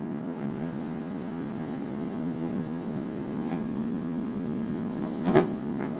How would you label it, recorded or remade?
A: remade